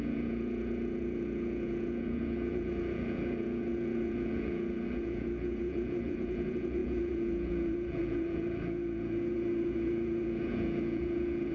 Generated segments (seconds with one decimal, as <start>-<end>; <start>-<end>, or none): 0.0-11.5